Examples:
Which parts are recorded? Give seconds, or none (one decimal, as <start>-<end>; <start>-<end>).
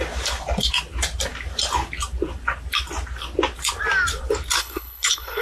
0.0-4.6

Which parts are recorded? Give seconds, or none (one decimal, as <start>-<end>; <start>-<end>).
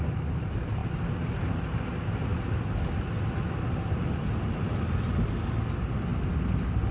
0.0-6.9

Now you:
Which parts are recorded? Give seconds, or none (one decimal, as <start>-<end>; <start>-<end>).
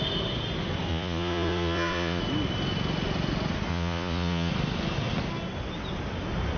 0.0-0.9; 2.2-3.7; 4.5-6.6